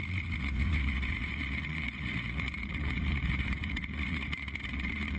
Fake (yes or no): yes